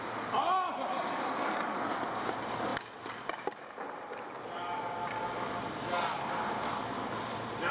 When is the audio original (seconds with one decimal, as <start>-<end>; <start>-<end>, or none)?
0.0-7.7